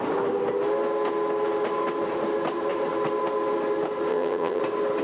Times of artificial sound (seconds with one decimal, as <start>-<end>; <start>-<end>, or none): 4.1-4.6